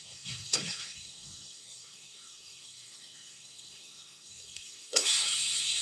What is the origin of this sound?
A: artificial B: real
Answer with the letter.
A